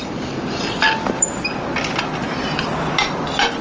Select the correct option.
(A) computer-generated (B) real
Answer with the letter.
B